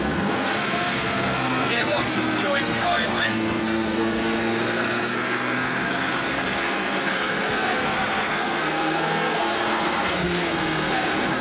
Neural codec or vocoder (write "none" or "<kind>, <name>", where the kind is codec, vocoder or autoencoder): codec, SNAC